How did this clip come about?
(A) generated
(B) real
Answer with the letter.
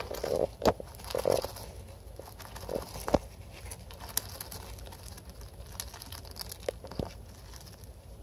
B